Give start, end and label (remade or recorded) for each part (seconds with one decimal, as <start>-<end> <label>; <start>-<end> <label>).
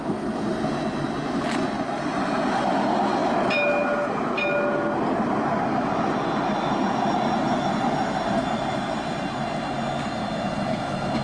0.0-11.2 recorded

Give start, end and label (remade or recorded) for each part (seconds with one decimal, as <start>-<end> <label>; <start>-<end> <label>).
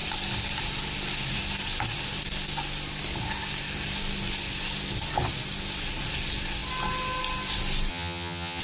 0.0-7.9 recorded; 7.9-8.6 remade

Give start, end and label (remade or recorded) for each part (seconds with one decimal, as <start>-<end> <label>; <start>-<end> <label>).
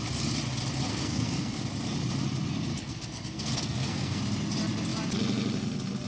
0.0-0.9 recorded; 0.9-1.6 remade; 1.6-2.7 recorded; 2.7-4.2 remade; 4.2-6.1 recorded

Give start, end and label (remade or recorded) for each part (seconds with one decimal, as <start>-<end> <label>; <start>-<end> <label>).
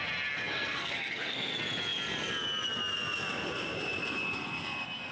0.0-0.5 recorded; 0.5-1.5 remade; 1.5-5.1 recorded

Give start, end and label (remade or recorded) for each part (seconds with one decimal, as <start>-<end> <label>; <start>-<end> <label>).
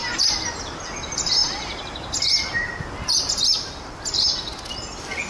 0.0-5.3 recorded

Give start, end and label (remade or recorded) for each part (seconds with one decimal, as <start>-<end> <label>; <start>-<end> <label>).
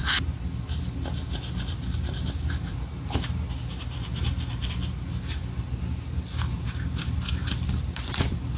0.0-8.6 recorded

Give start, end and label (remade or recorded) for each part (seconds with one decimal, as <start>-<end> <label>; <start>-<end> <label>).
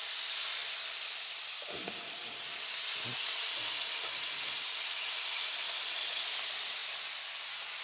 0.0-7.8 recorded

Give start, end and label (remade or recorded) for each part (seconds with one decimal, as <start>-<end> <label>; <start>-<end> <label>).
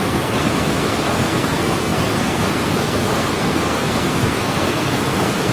0.0-5.5 remade